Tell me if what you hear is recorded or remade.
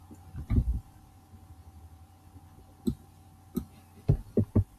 recorded